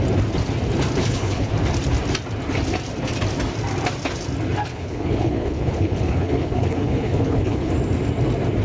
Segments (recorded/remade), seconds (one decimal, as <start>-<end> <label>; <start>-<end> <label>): 0.0-1.0 recorded; 1.0-1.5 remade; 1.5-4.7 recorded; 4.7-7.7 remade; 7.7-8.6 recorded